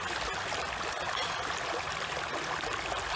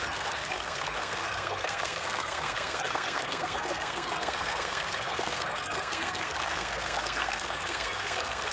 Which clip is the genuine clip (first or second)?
first